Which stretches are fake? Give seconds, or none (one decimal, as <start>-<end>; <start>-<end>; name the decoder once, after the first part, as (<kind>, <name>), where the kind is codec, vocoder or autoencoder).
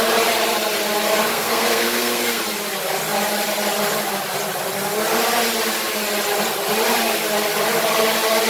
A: 1.3-2.4 (codec, SNAC)